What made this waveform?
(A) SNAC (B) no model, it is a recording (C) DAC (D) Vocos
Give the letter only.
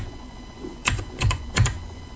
D